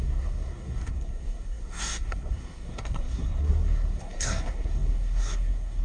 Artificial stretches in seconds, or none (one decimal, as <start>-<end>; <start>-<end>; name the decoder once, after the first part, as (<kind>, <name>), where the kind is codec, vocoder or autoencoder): 0.0-5.8 (codec, SNAC)

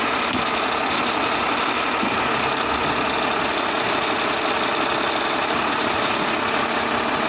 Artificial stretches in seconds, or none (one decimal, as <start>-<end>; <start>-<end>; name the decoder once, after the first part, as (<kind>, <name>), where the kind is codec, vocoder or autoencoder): none